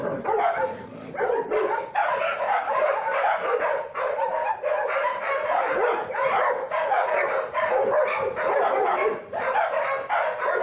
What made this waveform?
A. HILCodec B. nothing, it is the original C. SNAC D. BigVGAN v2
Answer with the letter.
B